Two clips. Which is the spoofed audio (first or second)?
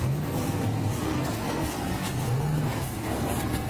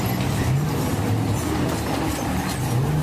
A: first